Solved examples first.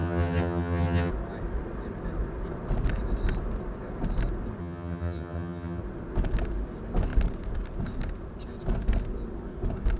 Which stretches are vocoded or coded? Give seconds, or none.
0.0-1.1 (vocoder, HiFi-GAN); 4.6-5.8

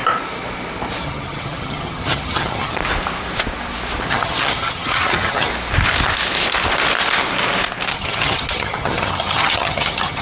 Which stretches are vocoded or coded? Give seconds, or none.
1.0-2.8 (vocoder, HiFi-GAN); 4.1-5.5; 7.9-10.2

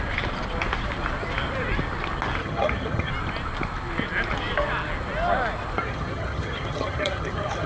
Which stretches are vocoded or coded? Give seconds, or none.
2.4-3.1 (vocoder, HiFi-GAN); 5.8-7.7

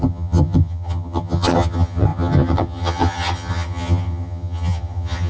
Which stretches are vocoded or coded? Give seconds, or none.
0.0-5.3 (vocoder, HiFi-GAN)

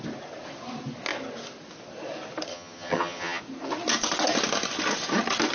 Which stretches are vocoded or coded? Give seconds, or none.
2.5-3.4 (vocoder, HiFi-GAN)

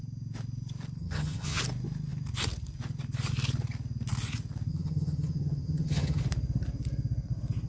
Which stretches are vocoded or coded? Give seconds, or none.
1.0-1.6 (vocoder, HiFi-GAN); 4.7-6.2